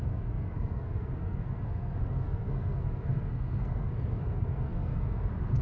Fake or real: fake